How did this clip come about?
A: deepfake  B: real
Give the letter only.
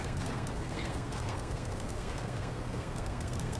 A